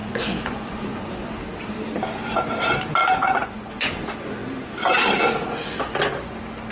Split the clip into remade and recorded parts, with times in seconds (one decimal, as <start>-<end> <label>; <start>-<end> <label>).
0.0-1.3 remade; 1.3-3.0 recorded; 3.0-3.9 remade; 3.9-6.7 recorded